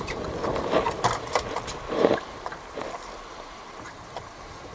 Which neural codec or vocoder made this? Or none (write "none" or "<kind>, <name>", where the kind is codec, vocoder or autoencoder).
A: vocoder, BigVGAN v2